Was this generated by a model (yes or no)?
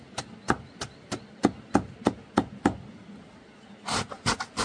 no